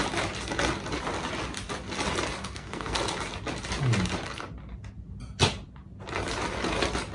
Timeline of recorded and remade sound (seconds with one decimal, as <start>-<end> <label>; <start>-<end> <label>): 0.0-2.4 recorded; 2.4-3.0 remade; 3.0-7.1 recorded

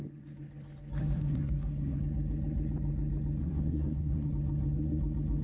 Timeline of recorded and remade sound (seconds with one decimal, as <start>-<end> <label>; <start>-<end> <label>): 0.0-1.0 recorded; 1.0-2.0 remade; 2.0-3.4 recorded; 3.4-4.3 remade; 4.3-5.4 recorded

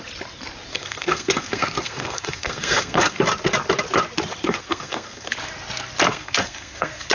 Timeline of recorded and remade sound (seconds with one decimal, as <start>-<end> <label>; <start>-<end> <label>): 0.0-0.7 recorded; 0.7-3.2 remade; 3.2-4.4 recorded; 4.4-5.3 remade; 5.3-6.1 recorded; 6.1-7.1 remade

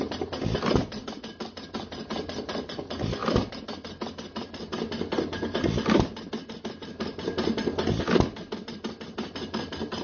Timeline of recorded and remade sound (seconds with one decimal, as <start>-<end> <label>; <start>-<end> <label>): 0.0-10.0 recorded

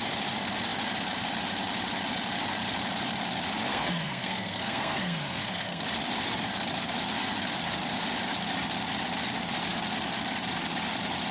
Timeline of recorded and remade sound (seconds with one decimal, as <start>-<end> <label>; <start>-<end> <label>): 0.0-3.7 recorded; 3.7-5.8 remade; 5.8-11.3 recorded

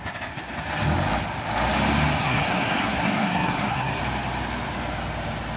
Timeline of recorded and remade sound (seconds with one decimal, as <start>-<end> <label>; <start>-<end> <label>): 0.0-2.2 recorded; 2.2-4.0 remade; 4.0-5.6 recorded